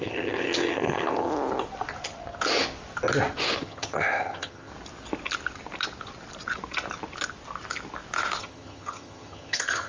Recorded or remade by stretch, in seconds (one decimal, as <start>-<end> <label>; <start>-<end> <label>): 0.0-1.3 remade; 1.3-3.6 recorded; 3.6-4.7 remade; 4.7-8.4 recorded; 8.4-9.9 remade